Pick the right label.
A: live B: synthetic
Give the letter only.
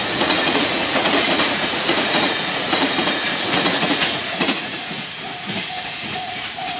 B